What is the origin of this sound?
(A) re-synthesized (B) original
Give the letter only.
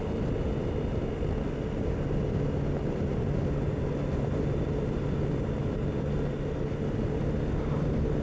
B